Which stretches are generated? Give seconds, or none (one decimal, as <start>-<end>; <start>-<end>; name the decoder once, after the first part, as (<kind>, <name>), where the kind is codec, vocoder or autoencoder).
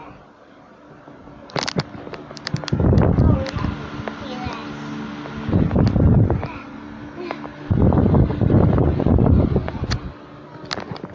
8.8-10.0 (vocoder, Vocos)